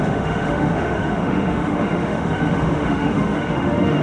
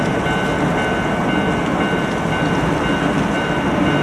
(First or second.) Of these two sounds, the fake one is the first